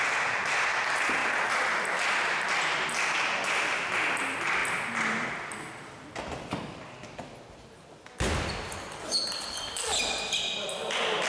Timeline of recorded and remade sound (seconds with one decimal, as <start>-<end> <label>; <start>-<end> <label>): 0.0-11.3 recorded